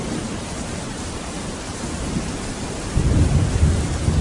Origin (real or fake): fake